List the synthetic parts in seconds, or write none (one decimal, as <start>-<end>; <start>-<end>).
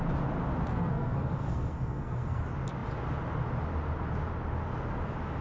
0.7-2.4